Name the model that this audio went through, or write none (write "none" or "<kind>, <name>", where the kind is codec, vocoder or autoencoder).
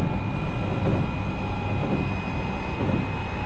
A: none